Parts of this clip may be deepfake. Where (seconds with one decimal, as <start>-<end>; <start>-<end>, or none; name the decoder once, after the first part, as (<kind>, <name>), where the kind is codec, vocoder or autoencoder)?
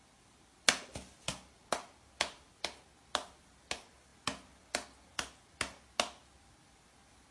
none